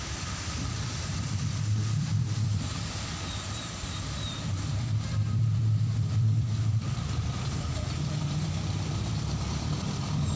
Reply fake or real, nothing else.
fake